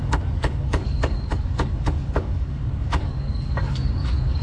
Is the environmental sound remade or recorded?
remade